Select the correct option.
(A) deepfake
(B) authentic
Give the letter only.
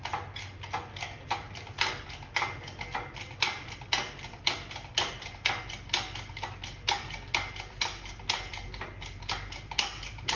B